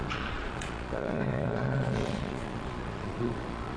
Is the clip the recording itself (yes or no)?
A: no